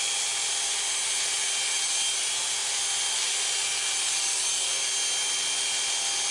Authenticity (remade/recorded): recorded